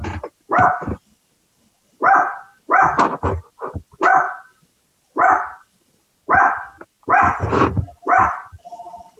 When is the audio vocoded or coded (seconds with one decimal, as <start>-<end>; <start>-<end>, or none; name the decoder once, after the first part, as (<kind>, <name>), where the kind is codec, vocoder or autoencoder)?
1.0-2.9 (vocoder, BigVGAN v2)